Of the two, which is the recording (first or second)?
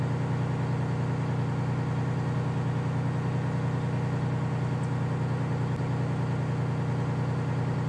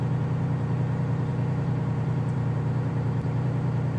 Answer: first